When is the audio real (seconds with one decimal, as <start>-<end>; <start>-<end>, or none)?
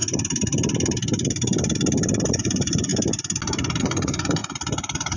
0.0-2.3; 2.9-3.8; 4.4-5.2